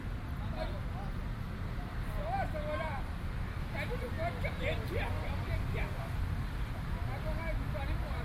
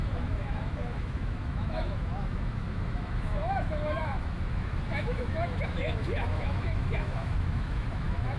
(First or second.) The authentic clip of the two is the first